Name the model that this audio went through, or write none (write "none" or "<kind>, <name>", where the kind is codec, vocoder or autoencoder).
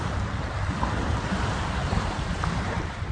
vocoder, BigVGAN v2